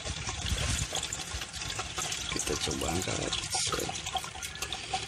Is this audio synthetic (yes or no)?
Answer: no